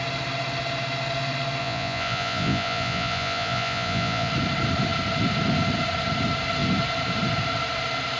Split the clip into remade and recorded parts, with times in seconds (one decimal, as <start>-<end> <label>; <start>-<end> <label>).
0.0-1.6 recorded; 1.6-4.3 remade; 4.3-8.2 recorded